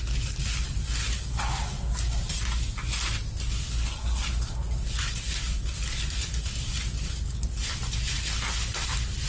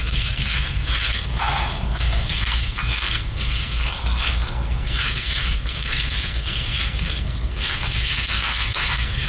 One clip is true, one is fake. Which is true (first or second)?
first